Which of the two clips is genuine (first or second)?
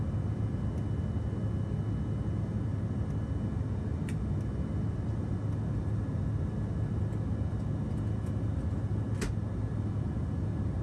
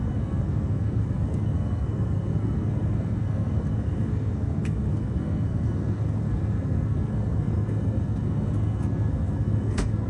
first